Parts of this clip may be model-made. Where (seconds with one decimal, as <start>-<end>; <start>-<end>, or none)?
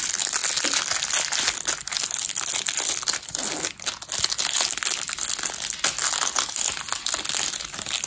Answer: none